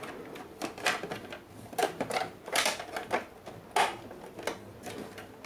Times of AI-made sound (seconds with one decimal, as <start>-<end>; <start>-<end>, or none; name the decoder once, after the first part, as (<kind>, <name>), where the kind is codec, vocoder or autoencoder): 1.8-2.8 (vocoder, BigVGAN v2)